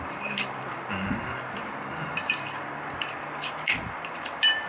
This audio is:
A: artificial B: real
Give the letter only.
A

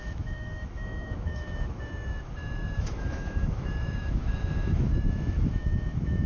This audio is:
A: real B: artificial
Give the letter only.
B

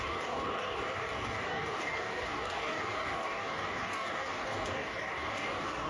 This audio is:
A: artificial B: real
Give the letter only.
A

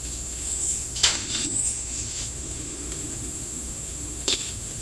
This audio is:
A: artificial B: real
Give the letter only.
A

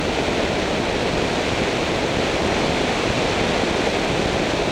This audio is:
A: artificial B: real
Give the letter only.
B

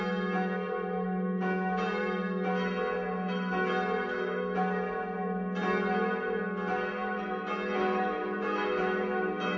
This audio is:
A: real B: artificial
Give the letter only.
A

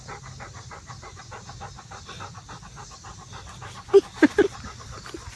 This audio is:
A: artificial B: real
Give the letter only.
B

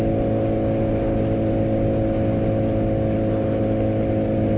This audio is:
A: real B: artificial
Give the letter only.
A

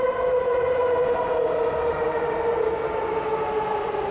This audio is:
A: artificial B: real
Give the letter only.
B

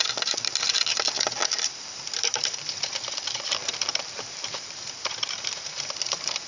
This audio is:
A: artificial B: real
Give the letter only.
A